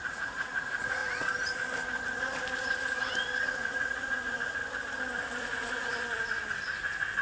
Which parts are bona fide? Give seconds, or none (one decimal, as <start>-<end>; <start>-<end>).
1.0-3.4; 4.6-5.4; 5.9-7.2